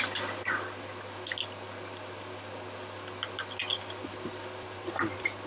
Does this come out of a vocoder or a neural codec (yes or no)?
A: no